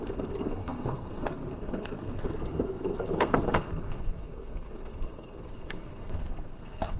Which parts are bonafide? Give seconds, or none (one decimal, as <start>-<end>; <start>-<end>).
none